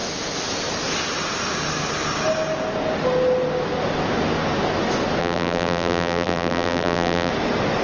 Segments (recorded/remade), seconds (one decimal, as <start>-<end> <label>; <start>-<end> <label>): 0.0-5.2 recorded; 5.2-7.3 remade; 7.3-7.8 recorded